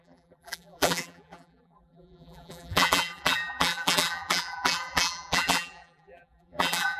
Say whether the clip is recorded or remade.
remade